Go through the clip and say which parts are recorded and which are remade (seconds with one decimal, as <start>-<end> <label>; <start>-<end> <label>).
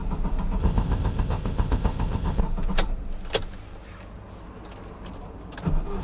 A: 0.0-0.6 recorded; 0.6-2.4 remade; 2.4-6.0 recorded